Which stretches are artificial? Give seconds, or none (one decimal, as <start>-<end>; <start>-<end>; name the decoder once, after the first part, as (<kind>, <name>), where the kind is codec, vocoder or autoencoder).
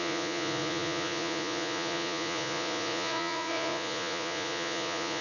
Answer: 0.0-5.2 (vocoder, Vocos)